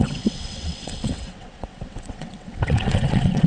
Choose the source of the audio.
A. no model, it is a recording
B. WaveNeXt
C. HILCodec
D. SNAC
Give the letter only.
B